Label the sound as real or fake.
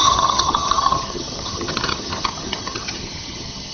fake